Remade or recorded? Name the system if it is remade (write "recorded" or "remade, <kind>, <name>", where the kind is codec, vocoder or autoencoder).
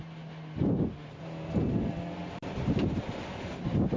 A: recorded